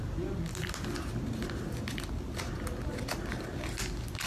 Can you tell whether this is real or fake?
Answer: real